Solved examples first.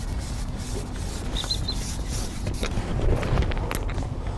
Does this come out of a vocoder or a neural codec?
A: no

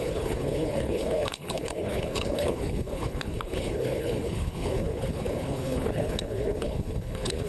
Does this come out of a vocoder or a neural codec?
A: yes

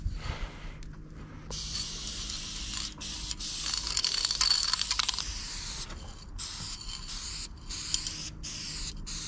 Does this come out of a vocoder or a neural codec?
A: no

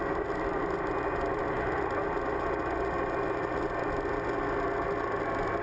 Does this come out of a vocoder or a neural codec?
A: no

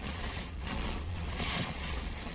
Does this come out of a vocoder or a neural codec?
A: yes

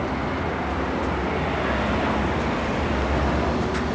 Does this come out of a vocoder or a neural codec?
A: no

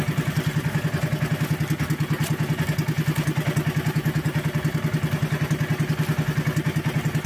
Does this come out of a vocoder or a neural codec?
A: no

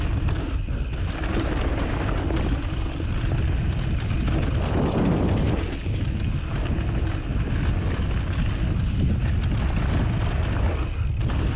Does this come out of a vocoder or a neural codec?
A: no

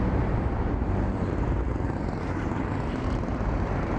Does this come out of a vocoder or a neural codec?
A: yes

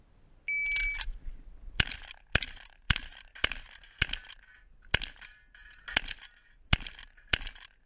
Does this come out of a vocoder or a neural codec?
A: no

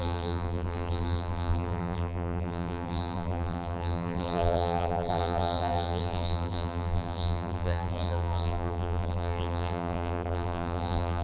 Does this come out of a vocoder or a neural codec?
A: yes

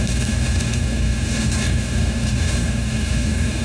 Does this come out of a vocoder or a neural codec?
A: yes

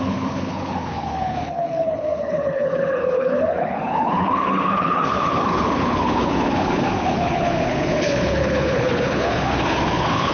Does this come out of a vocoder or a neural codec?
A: yes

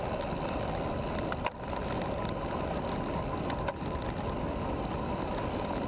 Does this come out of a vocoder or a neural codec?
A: no